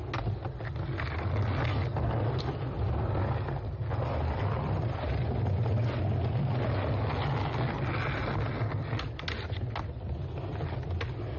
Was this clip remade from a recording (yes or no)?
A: no